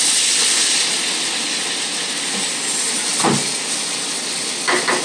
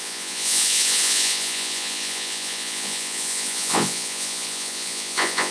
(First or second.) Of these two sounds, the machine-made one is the second